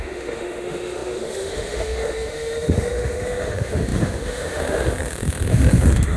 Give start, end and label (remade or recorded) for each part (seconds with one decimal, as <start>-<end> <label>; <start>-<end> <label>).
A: 0.0-6.2 remade